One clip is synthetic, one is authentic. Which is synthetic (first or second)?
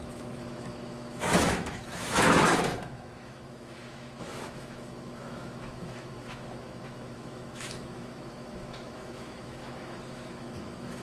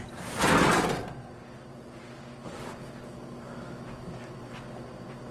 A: first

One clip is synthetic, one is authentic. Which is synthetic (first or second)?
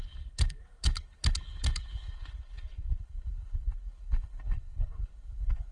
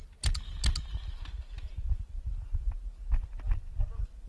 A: first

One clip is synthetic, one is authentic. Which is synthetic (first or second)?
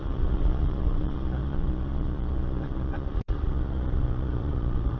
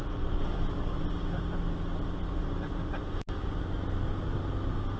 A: first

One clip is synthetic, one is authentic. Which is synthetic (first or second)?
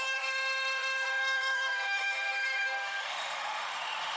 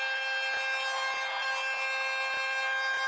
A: first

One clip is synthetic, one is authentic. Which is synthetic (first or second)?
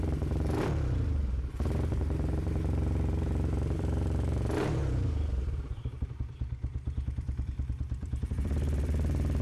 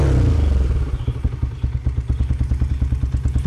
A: first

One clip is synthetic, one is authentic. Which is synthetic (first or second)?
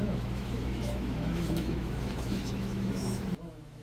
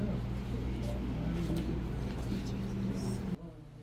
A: first